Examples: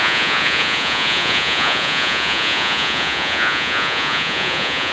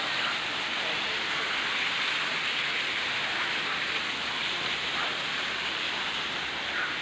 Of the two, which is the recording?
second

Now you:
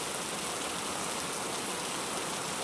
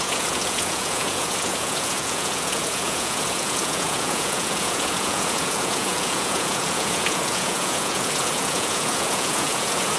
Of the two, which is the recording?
first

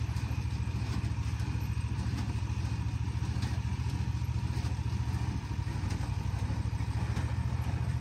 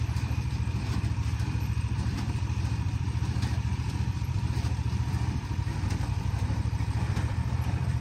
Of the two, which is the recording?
first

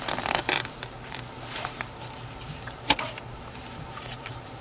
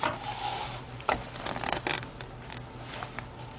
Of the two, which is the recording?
second